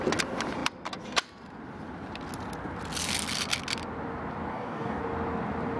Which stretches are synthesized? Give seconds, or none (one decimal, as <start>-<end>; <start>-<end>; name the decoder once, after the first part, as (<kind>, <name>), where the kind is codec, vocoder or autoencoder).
4.5-5.0 (codec, DAC)